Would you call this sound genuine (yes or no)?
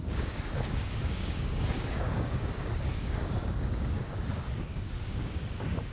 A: no